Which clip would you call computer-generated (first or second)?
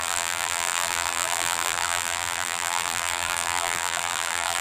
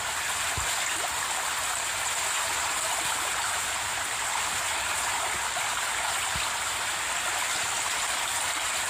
first